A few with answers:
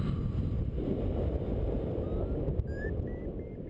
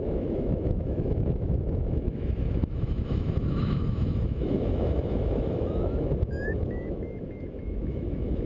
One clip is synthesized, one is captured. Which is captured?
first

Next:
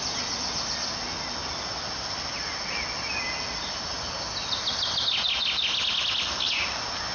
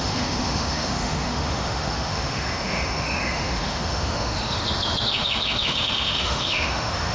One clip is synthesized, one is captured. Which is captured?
first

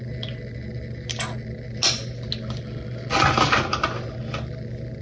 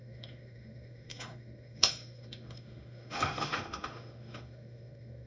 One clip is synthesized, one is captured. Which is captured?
first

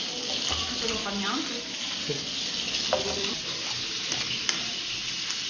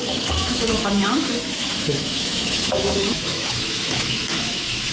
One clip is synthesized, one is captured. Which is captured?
first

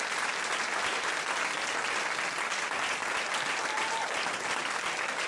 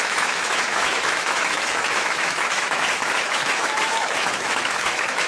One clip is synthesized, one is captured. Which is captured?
first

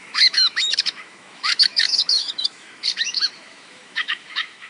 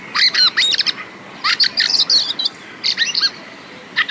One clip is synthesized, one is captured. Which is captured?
second